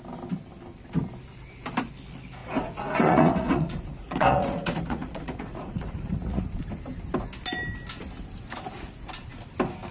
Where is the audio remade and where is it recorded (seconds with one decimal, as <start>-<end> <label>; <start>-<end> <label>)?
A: 0.0-2.4 recorded; 2.4-6.4 remade; 6.4-9.9 recorded